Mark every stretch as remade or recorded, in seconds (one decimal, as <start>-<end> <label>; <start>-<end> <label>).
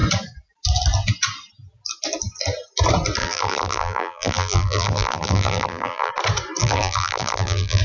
0.0-3.2 recorded; 3.2-6.1 remade; 6.1-6.6 recorded; 6.6-7.8 remade